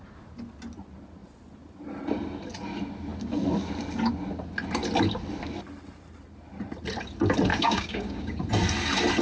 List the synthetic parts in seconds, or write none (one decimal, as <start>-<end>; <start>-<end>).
7.5-8.4